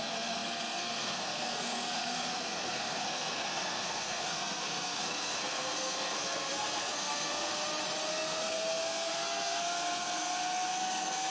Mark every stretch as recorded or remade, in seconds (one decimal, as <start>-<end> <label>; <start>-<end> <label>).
0.0-7.5 remade; 7.5-8.1 recorded; 8.1-11.3 remade

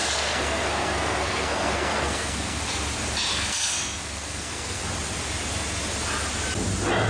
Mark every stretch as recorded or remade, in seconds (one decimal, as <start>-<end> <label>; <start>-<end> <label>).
0.0-2.6 remade; 2.6-3.3 recorded; 3.3-4.8 remade; 4.8-7.1 recorded